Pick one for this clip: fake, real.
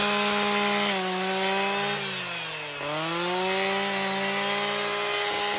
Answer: real